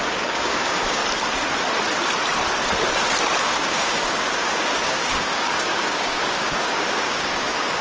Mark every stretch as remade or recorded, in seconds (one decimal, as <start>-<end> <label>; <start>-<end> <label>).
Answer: 0.0-1.0 remade; 1.0-3.4 recorded; 3.4-7.8 remade